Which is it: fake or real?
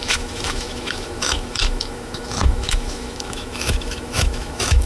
fake